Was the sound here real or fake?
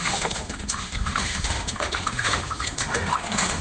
fake